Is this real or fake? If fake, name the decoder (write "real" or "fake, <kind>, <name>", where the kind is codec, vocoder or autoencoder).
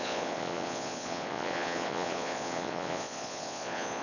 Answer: fake, vocoder, Vocos